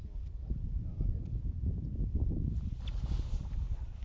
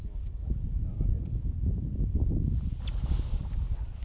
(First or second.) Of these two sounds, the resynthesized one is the first